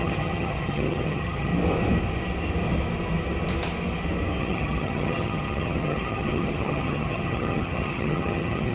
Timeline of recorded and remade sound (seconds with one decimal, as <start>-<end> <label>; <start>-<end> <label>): 0.0-1.5 remade; 1.5-4.4 recorded; 4.4-8.7 remade